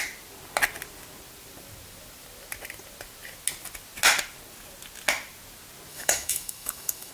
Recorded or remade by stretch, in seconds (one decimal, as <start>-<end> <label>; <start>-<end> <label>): 0.0-5.9 recorded; 5.9-7.1 remade